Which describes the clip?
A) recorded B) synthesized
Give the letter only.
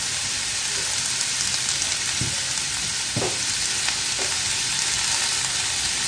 A